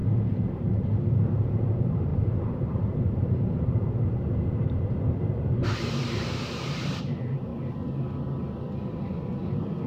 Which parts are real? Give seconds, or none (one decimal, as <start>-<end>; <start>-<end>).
7.5-9.9